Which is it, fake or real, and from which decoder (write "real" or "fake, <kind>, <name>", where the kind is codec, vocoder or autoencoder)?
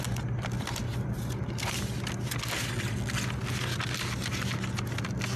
real